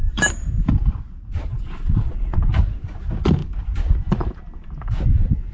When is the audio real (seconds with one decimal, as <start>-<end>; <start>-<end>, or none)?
0.0-1.5; 2.4-5.5

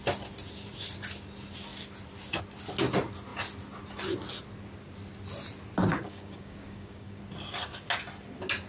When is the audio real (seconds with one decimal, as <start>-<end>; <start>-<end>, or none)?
0.0-5.9; 7.2-8.7

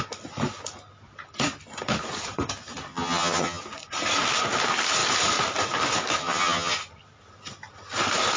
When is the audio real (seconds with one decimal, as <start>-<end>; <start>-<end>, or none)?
0.0-2.9; 3.6-6.2; 6.8-8.4

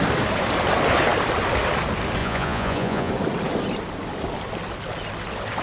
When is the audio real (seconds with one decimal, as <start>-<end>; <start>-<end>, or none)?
0.0-2.2; 3.1-5.6

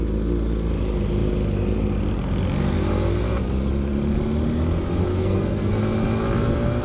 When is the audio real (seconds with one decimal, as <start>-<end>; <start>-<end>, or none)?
0.0-5.1; 5.7-6.8

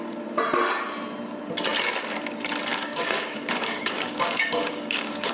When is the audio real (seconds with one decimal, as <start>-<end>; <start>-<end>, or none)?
0.0-2.7

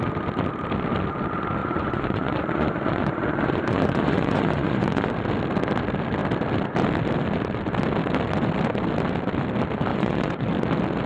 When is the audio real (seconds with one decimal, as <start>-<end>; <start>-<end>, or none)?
0.0-1.6; 5.1-9.9; 10.5-11.1